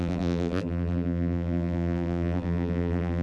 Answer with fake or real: fake